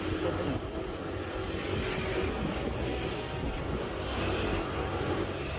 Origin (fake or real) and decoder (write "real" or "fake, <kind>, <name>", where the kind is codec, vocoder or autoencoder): real